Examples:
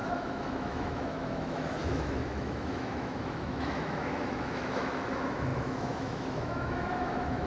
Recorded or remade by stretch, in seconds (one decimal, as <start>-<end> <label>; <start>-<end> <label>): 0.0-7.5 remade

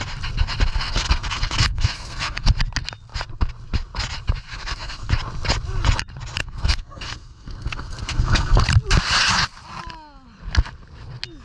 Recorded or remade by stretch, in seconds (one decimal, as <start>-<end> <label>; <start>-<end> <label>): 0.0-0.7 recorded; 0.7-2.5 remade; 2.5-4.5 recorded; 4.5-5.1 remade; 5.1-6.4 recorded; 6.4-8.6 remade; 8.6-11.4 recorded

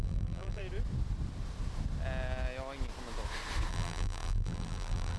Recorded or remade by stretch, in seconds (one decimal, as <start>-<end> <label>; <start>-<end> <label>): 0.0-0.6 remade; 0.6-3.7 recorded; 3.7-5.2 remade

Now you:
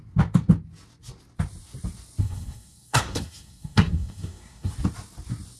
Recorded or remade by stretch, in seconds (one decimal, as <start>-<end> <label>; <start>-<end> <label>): 0.0-2.2 recorded; 2.2-4.7 remade; 4.7-5.6 recorded

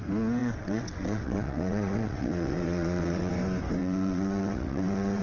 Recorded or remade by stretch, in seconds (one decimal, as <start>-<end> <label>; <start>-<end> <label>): 0.0-0.4 recorded; 0.4-3.3 remade; 3.3-3.8 recorded; 3.8-5.2 remade

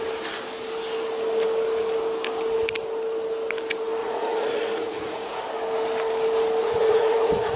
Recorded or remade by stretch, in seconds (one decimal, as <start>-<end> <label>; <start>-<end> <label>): 0.0-4.0 recorded; 4.0-5.4 remade; 5.4-6.6 recorded; 6.6-7.6 remade

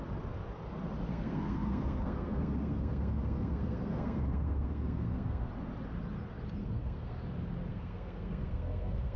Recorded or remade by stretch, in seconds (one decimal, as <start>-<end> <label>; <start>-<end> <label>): 0.0-1.1 recorded; 1.1-5.5 remade; 5.5-6.6 recorded; 6.6-7.2 remade; 7.2-7.7 recorded; 7.7-9.2 remade